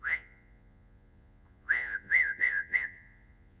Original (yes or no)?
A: no